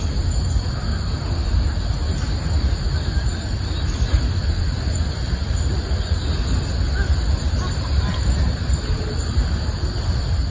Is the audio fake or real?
real